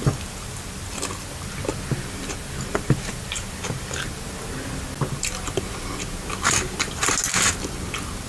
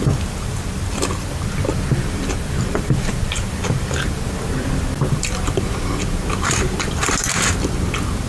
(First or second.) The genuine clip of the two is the first